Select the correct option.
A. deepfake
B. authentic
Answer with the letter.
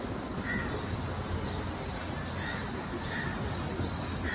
B